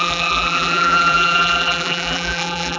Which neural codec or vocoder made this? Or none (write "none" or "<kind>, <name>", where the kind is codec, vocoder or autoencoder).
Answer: vocoder, BigVGAN v2